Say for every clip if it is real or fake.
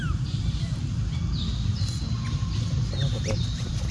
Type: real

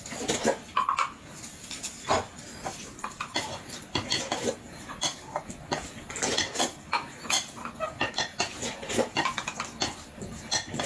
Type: real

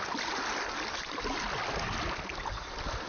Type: real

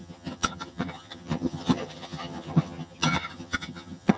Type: fake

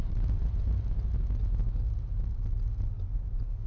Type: real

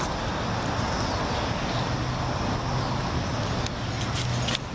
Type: real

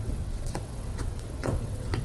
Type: fake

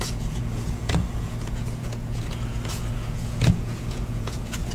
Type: fake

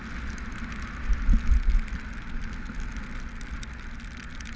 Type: real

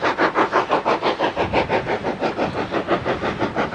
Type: real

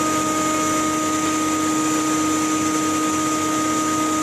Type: real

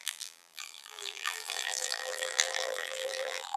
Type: fake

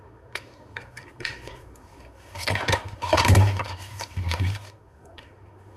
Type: fake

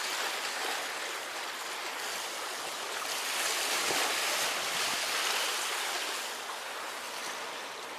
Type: real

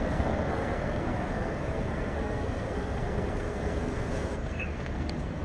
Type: fake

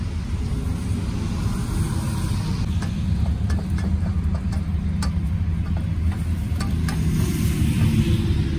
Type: real